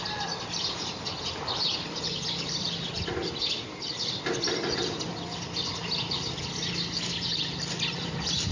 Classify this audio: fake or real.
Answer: real